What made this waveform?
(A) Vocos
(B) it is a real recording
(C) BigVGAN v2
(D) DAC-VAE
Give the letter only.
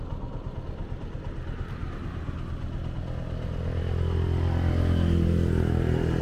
B